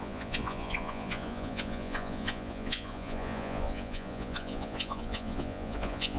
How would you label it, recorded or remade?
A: remade